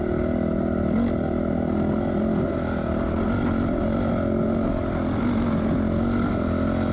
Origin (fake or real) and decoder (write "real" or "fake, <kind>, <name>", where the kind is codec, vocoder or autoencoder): real